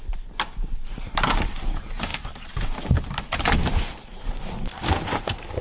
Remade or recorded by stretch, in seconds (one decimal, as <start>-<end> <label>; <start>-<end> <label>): 0.0-5.6 remade